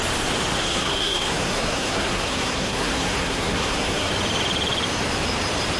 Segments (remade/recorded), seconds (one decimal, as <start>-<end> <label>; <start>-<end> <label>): 0.0-0.6 recorded; 0.6-4.1 remade; 4.1-5.8 recorded